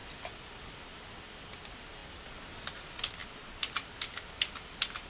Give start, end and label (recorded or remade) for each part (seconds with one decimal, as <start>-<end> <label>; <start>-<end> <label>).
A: 0.0-2.0 recorded; 2.0-2.8 remade; 2.8-5.1 recorded

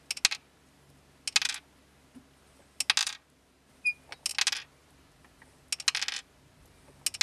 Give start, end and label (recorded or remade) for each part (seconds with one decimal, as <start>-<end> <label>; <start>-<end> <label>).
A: 0.0-3.0 recorded; 3.0-3.7 remade; 3.7-7.2 recorded